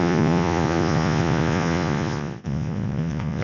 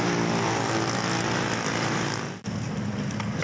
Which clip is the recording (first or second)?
second